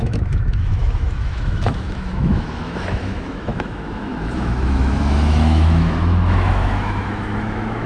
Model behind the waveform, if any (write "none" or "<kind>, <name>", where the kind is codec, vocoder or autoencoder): autoencoder, DAC-VAE